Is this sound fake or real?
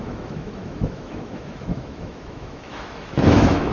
fake